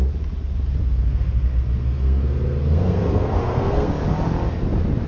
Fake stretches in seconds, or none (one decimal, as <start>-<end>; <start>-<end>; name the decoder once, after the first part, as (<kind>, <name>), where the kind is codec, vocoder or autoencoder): 0.8-3.9 (codec, SNAC)